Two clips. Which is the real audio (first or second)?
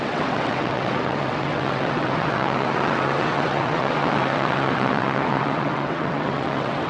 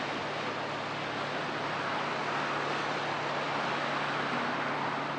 second